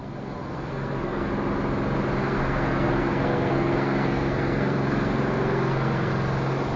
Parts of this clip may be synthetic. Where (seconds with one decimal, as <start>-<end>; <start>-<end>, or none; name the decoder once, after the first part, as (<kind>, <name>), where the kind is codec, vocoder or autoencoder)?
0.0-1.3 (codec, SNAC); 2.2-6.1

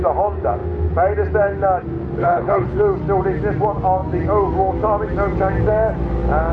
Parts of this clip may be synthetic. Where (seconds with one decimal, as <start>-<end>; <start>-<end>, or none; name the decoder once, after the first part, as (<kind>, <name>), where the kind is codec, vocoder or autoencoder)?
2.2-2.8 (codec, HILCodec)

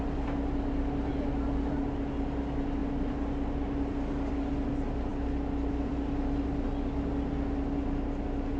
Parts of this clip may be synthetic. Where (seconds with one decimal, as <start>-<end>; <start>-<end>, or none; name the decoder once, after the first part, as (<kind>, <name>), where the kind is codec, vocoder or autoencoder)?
none